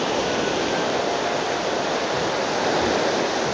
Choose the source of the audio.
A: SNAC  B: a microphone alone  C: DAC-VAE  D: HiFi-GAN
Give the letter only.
B